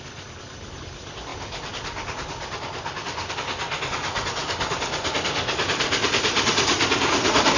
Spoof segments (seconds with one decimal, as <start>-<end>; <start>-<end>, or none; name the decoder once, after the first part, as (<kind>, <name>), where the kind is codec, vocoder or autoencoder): none